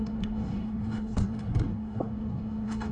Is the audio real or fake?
fake